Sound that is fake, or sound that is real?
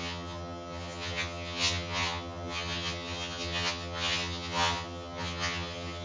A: fake